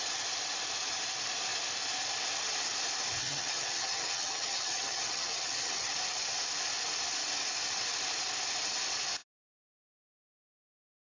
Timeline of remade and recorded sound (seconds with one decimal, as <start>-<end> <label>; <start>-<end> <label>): 0.0-3.2 recorded; 3.2-5.9 remade; 5.9-11.1 recorded